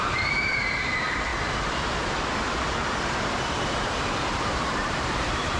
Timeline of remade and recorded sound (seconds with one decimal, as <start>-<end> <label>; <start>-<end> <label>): 0.0-1.3 remade; 1.3-4.7 recorded; 4.7-5.6 remade